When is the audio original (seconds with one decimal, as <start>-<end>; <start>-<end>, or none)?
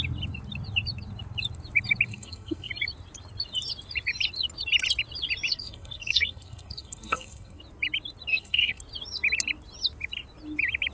0.0-2.1; 2.7-5.5; 7.6-8.3; 8.8-10.9